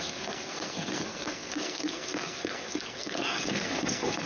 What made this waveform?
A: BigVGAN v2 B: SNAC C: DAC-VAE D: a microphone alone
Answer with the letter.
B